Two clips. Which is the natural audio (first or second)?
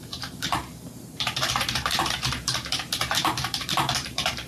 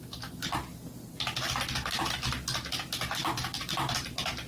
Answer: second